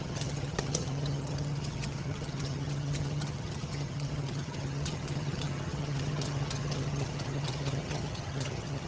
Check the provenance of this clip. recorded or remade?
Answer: remade